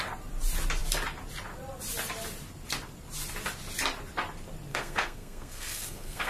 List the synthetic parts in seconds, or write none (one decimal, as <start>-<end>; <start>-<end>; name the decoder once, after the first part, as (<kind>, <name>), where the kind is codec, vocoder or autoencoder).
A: 4.7-6.3 (codec, SNAC)